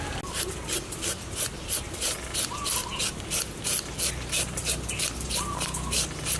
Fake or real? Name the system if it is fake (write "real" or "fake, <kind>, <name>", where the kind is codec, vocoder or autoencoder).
real